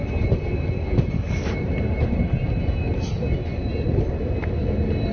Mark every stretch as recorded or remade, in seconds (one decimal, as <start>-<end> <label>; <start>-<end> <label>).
0.0-5.1 recorded